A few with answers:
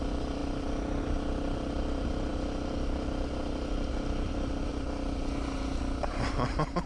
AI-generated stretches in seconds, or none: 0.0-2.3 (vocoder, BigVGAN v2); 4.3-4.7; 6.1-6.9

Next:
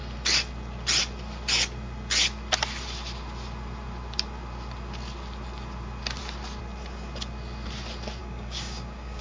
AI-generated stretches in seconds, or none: 8.2-9.2 (codec, DAC)

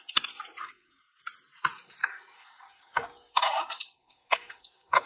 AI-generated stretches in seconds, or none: 0.6-1.2 (codec, DAC); 2.0-5.1